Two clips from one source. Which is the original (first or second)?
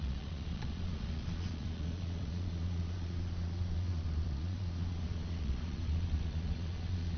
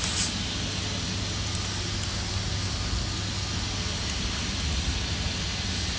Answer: second